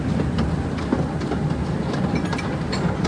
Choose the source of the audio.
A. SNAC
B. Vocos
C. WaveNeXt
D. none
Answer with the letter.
D